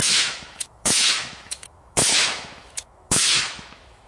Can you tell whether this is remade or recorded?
remade